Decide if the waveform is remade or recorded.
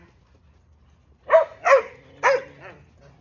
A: recorded